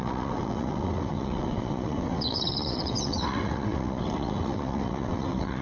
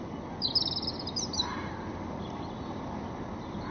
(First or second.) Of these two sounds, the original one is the second